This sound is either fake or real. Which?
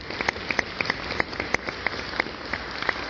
real